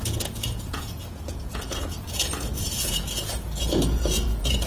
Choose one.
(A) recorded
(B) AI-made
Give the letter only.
B